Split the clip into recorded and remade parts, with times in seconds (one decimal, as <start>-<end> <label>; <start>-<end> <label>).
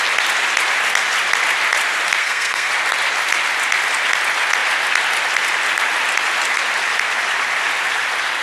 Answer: 0.0-2.2 recorded; 2.2-2.7 remade; 2.7-8.4 recorded